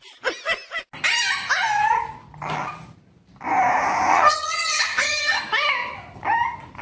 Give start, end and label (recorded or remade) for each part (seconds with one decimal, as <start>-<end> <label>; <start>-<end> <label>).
0.0-4.1 recorded; 4.1-5.4 remade; 5.4-6.8 recorded